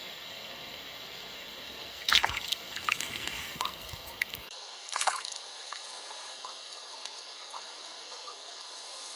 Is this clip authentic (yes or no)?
no